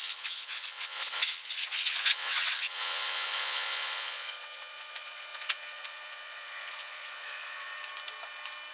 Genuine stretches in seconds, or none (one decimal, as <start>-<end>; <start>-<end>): 7.7-8.7

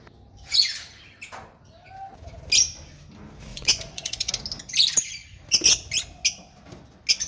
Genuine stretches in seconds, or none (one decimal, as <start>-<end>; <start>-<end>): 0.0-3.5; 4.3-7.3

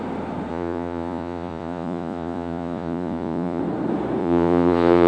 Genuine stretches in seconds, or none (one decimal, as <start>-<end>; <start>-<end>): 0.0-0.5; 3.6-4.2

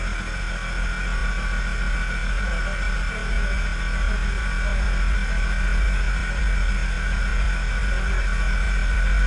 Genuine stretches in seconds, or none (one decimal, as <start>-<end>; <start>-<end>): 0.0-9.3

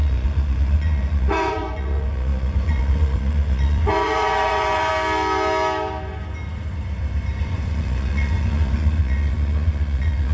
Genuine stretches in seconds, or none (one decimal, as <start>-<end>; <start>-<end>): 4.9-7.4

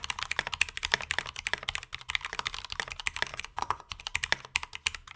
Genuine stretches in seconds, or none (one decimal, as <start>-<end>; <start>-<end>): 0.0-3.3; 4.0-5.2

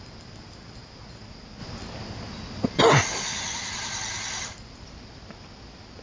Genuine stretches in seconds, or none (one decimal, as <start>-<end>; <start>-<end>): 0.0-6.0

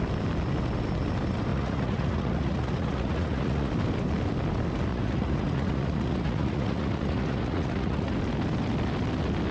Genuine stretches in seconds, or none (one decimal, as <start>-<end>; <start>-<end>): 0.0-1.5; 3.7-4.9; 8.1-9.5